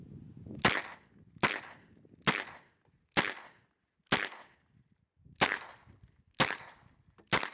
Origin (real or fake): real